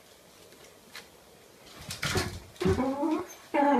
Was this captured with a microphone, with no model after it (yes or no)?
yes